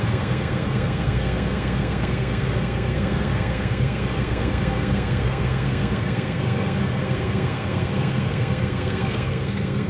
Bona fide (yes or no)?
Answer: no